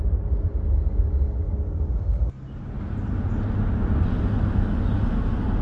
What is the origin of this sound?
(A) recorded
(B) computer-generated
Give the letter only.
A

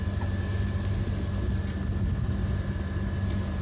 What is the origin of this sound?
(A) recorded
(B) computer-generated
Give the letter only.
A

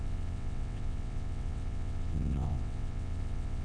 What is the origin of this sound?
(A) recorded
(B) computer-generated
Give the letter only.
B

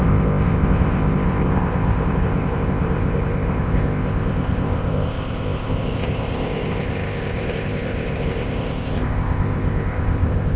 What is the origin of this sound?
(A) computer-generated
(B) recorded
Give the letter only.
A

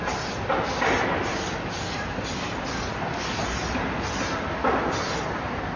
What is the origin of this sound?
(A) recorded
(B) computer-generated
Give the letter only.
A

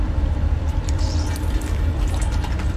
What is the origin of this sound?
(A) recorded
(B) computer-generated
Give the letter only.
B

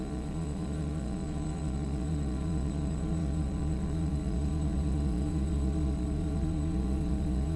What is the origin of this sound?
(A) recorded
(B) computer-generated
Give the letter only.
B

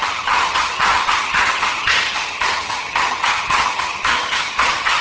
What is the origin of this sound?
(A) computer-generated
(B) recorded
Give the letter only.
A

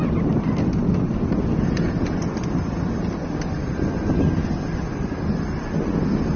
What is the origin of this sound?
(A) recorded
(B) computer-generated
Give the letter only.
A